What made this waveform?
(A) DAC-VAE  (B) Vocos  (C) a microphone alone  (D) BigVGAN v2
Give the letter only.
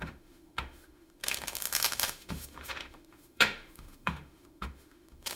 A